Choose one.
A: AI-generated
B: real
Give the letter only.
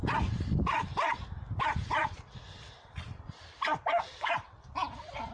A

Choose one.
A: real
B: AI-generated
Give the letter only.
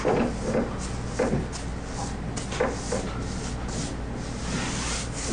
A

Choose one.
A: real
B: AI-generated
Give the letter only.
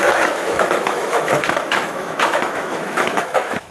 B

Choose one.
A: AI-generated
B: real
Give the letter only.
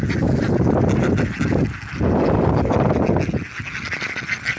B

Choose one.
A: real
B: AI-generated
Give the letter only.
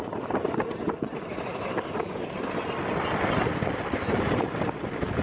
A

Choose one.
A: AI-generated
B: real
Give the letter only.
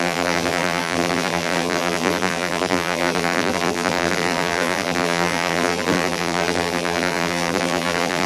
A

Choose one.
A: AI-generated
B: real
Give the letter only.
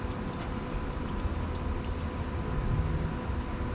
B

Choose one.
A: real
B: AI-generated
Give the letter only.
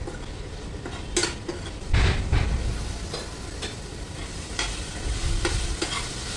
A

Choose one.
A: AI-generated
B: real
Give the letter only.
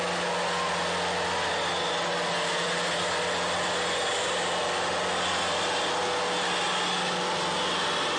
B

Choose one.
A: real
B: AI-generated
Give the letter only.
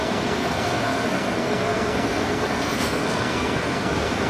B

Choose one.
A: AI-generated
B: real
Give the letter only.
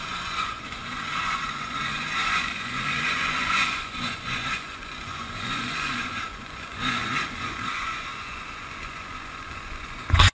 A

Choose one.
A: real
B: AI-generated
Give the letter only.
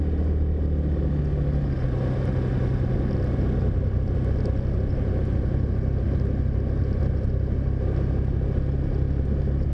A